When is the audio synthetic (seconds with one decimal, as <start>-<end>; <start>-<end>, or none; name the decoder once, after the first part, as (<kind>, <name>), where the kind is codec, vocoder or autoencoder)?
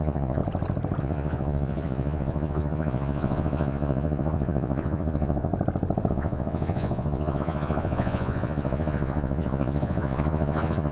0.0-0.4 (vocoder, Vocos); 1.0-5.5; 6.1-10.9